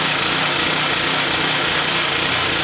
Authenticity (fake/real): real